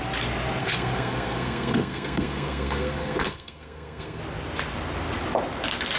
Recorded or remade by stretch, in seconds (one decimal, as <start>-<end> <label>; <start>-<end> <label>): 0.0-0.6 recorded; 0.6-4.2 remade; 4.2-6.0 recorded